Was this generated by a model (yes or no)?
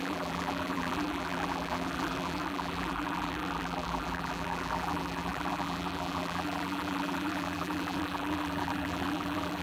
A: yes